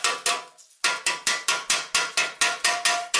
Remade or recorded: recorded